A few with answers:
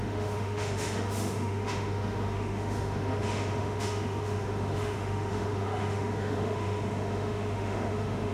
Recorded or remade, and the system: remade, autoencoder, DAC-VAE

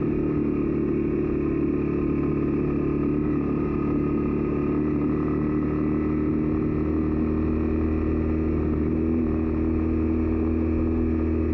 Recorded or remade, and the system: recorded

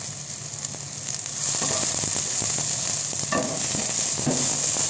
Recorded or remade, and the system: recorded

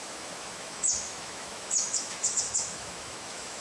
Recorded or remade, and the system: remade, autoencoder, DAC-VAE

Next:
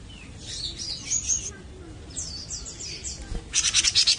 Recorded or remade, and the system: recorded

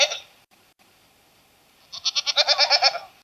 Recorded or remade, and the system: recorded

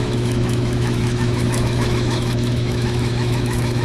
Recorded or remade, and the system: remade, autoencoder, DAC-VAE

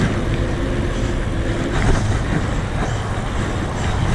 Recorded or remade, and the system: recorded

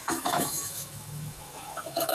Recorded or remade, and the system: remade, autoencoder, DAC-VAE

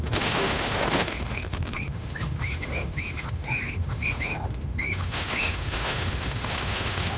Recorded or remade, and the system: remade, autoencoder, DAC-VAE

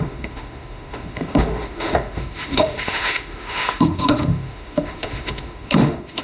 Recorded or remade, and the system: remade, autoencoder, DAC-VAE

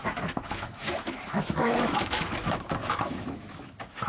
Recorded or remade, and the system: remade, autoencoder, DAC-VAE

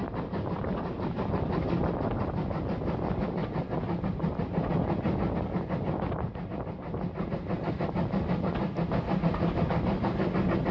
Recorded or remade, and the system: recorded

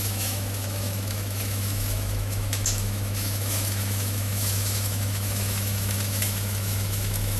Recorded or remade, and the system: remade, autoencoder, DAC-VAE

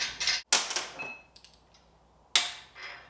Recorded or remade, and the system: recorded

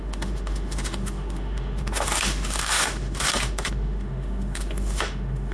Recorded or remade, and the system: remade, autoencoder, DAC-VAE